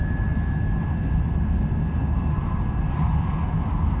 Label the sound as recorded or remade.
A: recorded